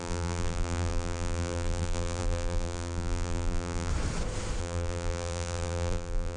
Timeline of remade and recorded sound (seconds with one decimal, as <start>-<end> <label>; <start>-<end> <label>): 0.0-3.9 remade; 3.9-4.6 recorded; 4.6-6.4 remade